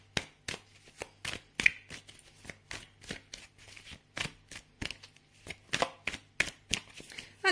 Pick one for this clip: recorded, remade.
recorded